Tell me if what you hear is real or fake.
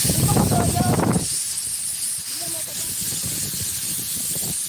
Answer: fake